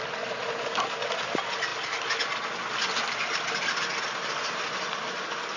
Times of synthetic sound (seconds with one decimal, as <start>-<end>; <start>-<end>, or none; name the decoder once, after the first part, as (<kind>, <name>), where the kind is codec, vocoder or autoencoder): none